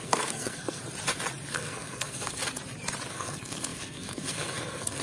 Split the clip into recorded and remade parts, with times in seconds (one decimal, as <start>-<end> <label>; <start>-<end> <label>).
0.0-0.8 remade; 0.8-1.5 recorded; 1.5-2.4 remade; 2.4-3.1 recorded; 3.1-5.0 remade